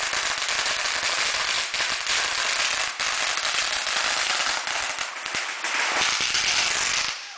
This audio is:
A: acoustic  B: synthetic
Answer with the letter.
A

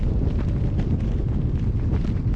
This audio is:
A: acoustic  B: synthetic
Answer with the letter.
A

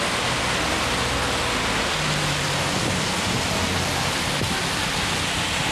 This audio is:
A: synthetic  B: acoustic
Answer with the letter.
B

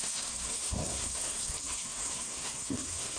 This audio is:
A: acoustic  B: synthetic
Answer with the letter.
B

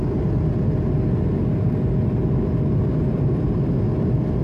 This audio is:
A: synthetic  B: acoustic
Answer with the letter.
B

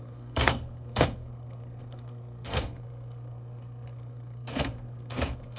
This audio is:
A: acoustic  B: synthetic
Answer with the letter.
B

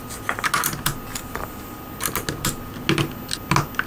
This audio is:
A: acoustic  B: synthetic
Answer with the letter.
A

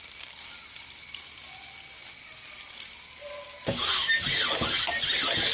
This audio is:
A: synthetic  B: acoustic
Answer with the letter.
B